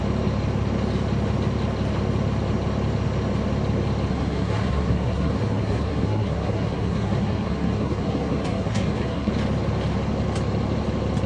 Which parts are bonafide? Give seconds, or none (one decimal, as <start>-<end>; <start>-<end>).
0.0-4.1; 9.3-11.3